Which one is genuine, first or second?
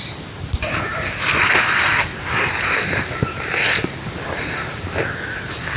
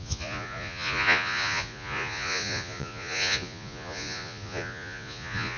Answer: first